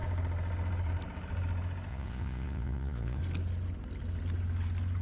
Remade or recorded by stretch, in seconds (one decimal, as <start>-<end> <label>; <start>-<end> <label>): 0.0-1.9 recorded; 1.9-3.2 remade; 3.2-5.0 recorded